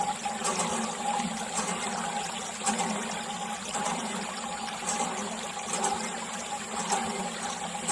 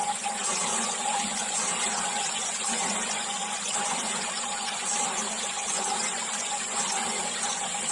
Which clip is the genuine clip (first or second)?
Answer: first